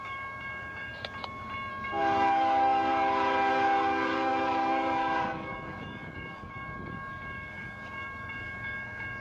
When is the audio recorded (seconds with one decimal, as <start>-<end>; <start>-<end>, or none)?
0.9-1.7; 2.9-3.5